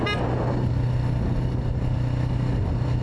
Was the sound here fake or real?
real